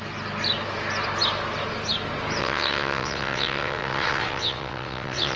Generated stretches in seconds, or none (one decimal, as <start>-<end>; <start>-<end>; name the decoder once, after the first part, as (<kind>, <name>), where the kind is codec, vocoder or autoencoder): 2.4-5.4 (vocoder, WaveNeXt)